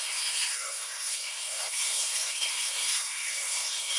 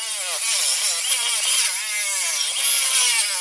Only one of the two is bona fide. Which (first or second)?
second